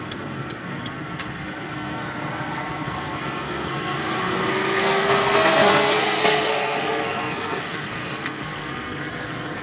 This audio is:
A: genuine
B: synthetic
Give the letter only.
B